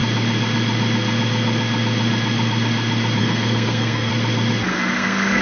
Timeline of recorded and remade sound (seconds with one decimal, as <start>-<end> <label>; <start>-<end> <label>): 0.0-3.2 recorded; 3.2-4.1 remade; 4.1-4.7 recorded; 4.7-5.4 remade